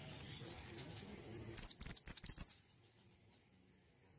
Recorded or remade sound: recorded